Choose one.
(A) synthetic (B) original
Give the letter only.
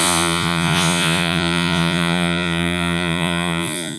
A